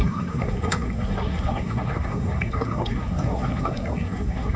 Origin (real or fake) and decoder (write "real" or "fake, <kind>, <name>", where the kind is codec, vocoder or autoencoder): fake, codec, SNAC